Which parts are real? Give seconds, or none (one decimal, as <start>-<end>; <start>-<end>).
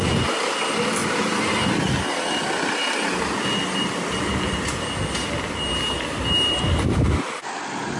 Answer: 0.0-8.0